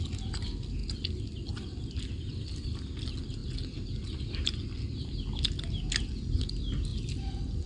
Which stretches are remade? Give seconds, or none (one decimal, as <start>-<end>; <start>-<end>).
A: none